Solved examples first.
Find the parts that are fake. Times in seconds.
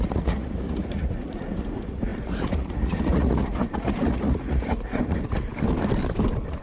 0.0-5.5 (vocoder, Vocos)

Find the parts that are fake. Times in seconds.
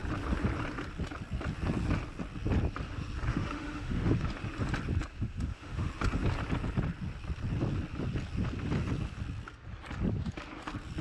3.3-4.3 (autoencoder, DAC-VAE); 5.1-5.9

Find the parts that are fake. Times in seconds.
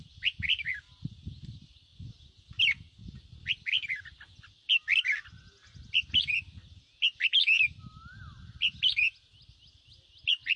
none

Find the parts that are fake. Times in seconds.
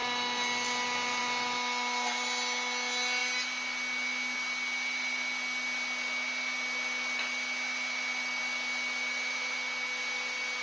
none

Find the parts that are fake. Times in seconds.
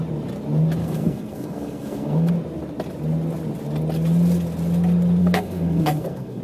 0.8-2.3 (codec, SNAC); 5.2-6.4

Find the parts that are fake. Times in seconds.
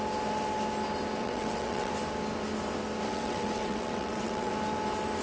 1.2-1.9 (vocoder, WaveNeXt); 3.1-4.5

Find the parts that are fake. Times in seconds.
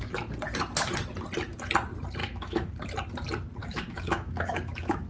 2.2-2.7 (autoencoder, DAC-VAE); 3.6-5.1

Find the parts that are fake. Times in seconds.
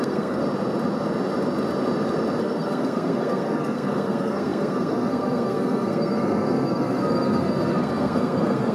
0.0-0.4 (codec, SNAC); 2.4-8.7